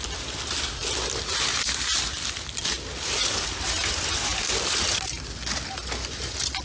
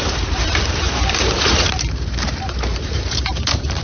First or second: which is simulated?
second